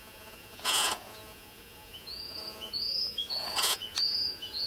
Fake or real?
fake